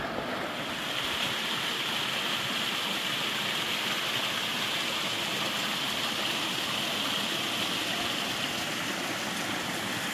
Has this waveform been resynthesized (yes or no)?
no